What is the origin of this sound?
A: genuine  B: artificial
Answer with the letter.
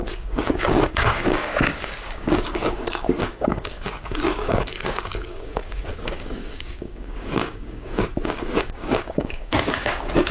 B